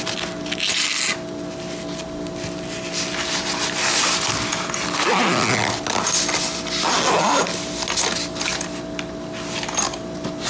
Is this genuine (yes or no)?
yes